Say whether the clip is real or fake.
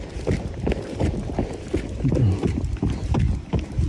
real